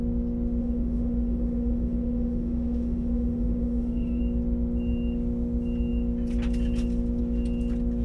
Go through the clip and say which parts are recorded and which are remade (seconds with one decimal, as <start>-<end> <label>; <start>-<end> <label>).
0.0-0.6 recorded; 0.6-4.2 remade; 4.2-8.0 recorded